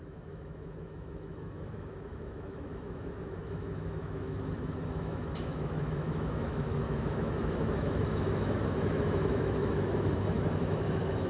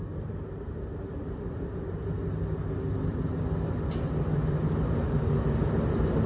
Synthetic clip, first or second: first